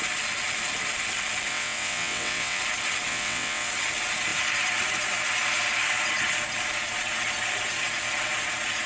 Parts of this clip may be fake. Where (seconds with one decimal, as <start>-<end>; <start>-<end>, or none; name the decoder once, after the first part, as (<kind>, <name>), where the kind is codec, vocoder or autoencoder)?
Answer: 1.5-2.6 (vocoder, WaveNeXt); 3.1-3.7